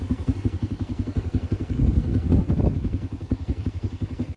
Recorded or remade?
remade